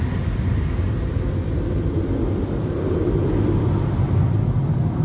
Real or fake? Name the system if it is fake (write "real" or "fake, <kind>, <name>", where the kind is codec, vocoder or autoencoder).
real